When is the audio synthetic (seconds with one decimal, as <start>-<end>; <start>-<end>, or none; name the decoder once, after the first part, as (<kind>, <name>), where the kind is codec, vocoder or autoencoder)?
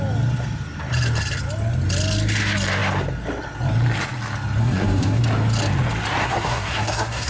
4.6-5.2 (codec, SNAC); 6.2-7.3